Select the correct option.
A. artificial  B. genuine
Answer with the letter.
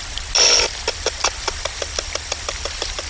B